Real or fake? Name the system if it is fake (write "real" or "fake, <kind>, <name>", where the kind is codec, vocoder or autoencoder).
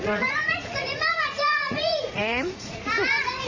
fake, vocoder, Vocos